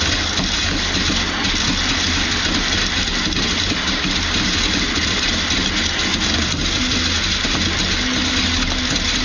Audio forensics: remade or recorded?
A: recorded